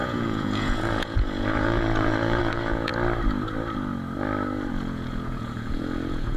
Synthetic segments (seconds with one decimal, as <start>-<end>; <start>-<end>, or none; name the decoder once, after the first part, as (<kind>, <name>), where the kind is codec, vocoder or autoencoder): 0.0-2.9 (vocoder, Vocos); 4.7-6.4